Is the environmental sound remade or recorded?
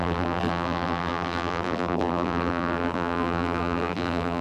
remade